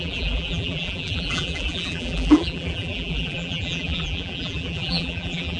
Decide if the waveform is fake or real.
fake